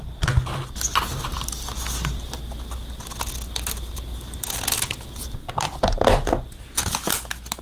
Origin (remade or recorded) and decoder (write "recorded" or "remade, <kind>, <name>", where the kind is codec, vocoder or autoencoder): recorded